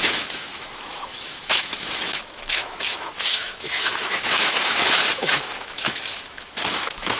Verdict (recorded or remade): remade